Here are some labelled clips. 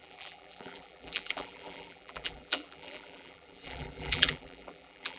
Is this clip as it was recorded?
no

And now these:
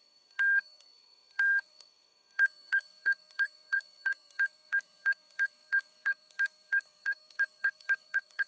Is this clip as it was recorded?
no